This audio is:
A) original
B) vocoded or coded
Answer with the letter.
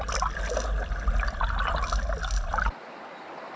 A